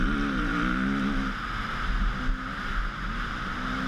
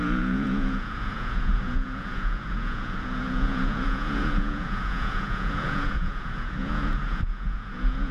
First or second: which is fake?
second